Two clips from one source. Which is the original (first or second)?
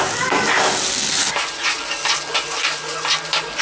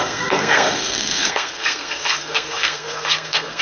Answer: first